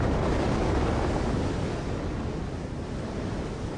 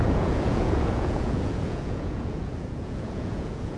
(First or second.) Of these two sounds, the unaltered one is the first